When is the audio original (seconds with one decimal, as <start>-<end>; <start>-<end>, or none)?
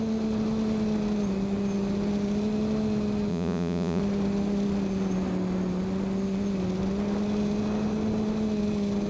0.0-3.3; 4.0-9.1